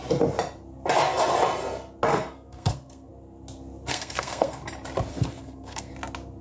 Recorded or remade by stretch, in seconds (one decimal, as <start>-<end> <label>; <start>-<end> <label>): 0.0-2.1 recorded; 2.1-3.1 remade; 3.1-3.9 recorded; 3.9-4.6 remade; 4.6-5.1 recorded; 5.1-5.9 remade; 5.9-6.4 recorded